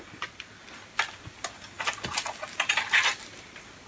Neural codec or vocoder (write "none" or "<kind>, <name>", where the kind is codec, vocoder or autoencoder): none